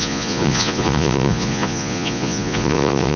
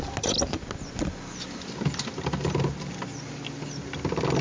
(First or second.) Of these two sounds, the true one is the second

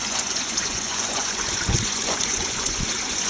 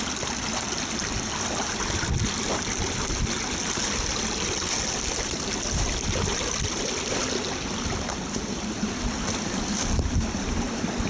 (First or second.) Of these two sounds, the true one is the second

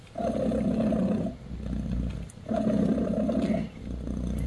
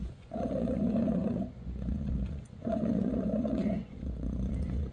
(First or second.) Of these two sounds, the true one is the first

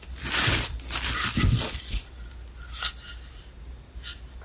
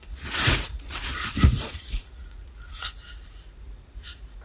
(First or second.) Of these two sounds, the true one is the first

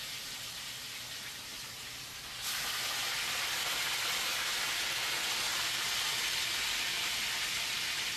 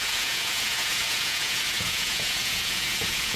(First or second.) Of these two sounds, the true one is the first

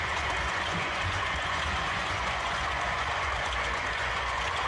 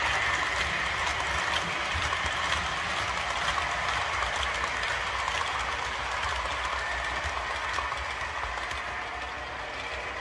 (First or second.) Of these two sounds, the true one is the second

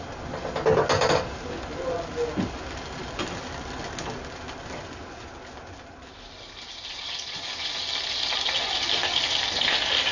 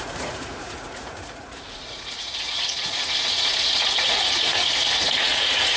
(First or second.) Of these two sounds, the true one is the first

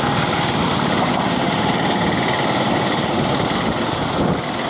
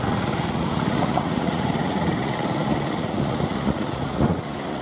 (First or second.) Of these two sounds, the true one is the first